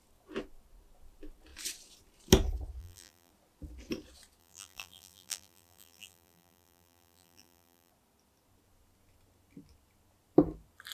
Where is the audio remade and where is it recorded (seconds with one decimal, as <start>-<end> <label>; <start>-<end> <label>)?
0.0-2.8 recorded; 2.8-3.3 remade; 3.3-4.4 recorded; 4.4-7.9 remade; 7.9-10.9 recorded